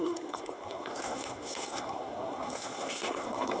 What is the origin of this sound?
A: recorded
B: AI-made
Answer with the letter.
B